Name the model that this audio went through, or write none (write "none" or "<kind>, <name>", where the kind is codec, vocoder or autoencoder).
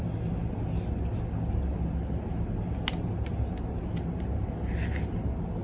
none